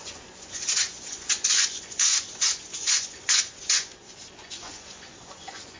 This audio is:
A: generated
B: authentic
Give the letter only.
A